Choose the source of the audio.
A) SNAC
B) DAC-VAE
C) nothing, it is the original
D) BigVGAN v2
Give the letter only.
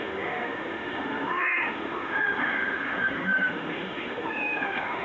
B